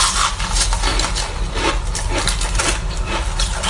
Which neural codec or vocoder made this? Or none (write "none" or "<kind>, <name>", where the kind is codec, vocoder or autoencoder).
none